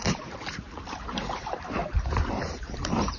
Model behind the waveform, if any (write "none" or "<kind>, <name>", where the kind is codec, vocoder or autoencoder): vocoder, BigVGAN v2